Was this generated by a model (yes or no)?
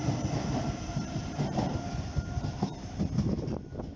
no